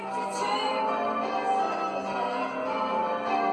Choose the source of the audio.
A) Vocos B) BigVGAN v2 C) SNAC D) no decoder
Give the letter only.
D